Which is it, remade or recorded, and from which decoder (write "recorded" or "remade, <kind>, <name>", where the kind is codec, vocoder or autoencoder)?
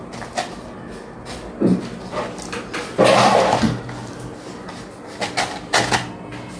recorded